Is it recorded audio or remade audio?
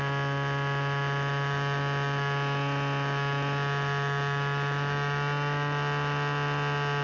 recorded